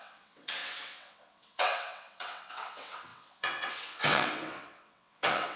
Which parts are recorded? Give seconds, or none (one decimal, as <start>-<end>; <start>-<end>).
none